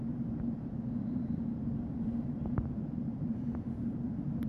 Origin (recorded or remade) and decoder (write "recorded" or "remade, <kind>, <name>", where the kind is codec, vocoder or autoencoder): remade, vocoder, BigVGAN v2